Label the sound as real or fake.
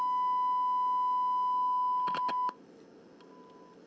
real